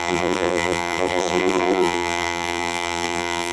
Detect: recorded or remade remade